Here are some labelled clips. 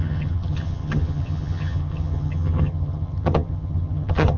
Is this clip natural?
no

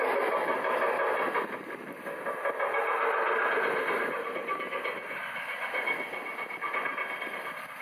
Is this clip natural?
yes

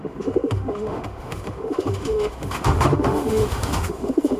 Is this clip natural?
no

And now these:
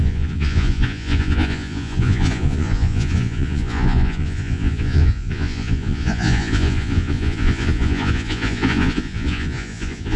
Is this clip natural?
no